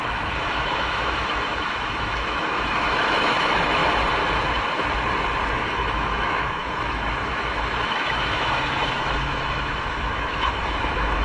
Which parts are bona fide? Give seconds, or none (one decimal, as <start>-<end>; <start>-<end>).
3.8-5.6